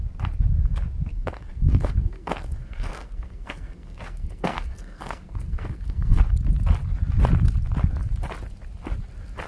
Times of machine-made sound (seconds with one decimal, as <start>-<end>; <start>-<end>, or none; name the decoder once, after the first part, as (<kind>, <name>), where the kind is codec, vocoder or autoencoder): 1.1-6.2 (codec, SNAC)